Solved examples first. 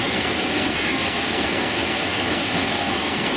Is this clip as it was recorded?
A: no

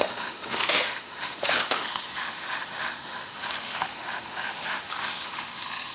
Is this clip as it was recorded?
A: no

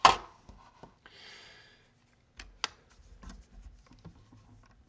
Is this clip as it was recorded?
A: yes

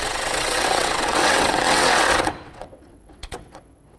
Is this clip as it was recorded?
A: no